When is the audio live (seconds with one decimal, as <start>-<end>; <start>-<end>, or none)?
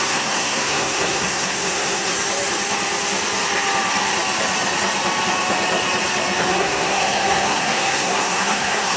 2.1-6.5